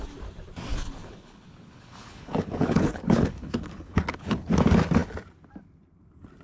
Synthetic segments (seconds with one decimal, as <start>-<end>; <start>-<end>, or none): 0.7-4.5